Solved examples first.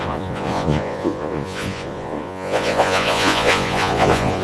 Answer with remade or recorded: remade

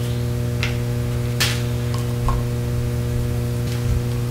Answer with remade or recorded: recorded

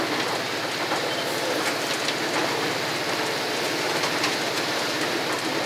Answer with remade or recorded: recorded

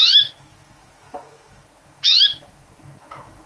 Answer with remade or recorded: remade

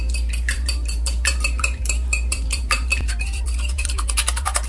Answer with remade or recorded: remade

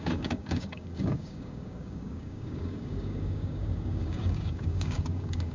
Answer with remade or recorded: remade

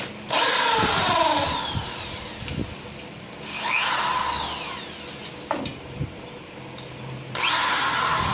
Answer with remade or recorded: recorded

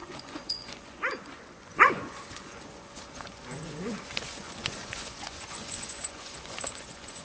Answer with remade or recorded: remade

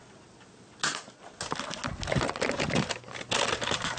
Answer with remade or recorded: recorded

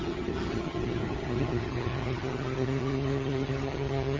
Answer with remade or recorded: remade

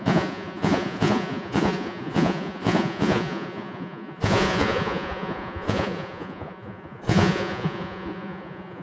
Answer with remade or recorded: remade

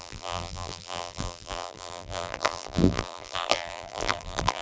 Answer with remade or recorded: remade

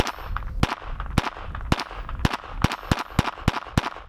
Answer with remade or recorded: recorded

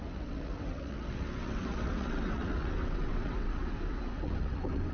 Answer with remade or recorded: remade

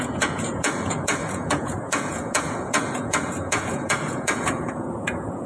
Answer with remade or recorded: remade